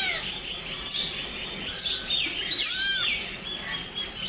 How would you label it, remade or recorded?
recorded